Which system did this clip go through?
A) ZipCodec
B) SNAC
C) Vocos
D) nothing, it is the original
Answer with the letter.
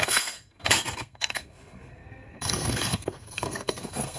B